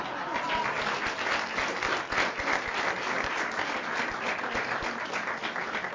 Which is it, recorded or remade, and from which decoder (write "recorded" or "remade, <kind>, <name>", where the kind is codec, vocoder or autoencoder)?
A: recorded